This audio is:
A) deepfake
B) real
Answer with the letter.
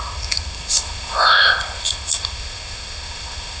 A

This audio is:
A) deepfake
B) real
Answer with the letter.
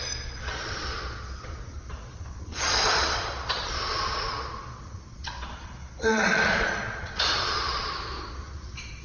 A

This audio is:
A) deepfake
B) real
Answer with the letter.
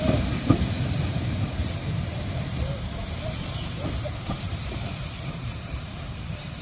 A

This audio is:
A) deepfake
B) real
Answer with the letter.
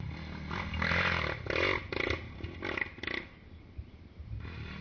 B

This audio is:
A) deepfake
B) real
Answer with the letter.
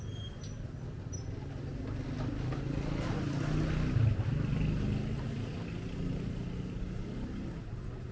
B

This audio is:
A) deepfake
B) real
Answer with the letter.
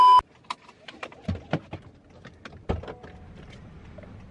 B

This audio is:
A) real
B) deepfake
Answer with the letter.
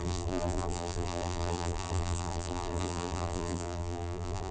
B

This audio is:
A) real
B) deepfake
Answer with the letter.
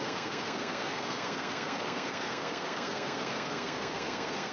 B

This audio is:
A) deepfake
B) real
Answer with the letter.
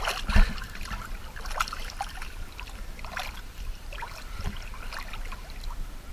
A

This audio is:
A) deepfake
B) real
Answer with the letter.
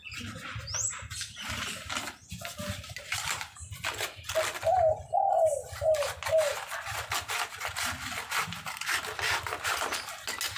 B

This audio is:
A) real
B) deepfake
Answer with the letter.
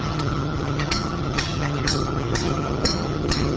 B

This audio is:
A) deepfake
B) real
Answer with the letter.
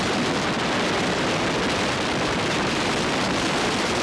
A